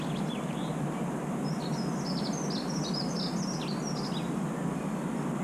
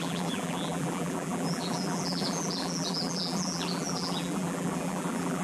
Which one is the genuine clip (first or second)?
first